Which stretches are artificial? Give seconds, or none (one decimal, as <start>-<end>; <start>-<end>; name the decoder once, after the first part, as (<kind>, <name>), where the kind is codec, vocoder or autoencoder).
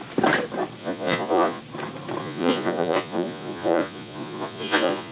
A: 0.8-1.6 (vocoder, Vocos); 2.2-5.1